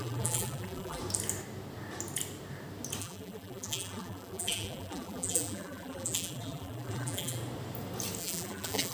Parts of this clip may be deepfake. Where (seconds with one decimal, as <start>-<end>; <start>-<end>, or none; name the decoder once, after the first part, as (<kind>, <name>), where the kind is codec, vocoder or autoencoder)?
0.0-1.0 (vocoder, BigVGAN v2); 3.0-7.4; 8.2-8.9